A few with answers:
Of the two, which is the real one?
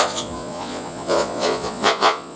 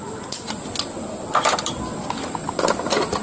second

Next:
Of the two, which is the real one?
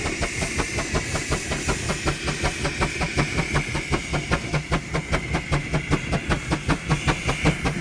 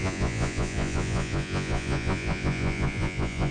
first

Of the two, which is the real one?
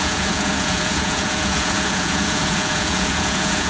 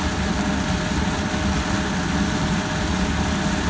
second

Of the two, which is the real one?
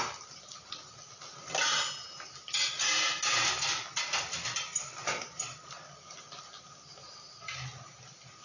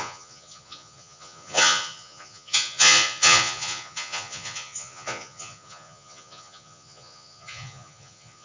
first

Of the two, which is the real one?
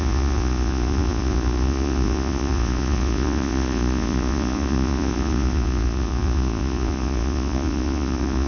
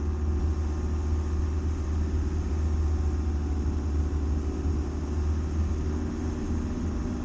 second